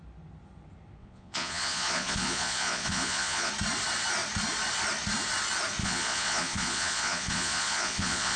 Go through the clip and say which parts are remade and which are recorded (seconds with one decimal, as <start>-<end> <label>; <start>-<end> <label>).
0.0-1.0 recorded; 1.0-3.5 remade; 3.5-5.8 recorded; 5.8-8.4 remade